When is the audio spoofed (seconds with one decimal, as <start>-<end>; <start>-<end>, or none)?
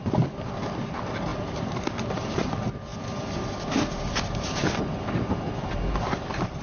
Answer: none